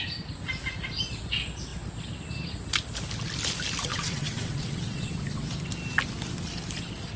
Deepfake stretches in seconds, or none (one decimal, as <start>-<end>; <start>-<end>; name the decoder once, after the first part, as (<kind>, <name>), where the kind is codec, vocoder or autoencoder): 3.9-5.1 (vocoder, WaveNeXt)